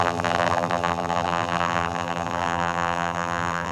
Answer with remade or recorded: remade